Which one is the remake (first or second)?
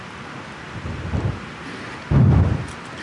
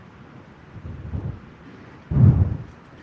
second